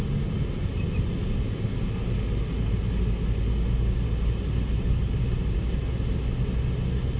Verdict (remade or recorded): recorded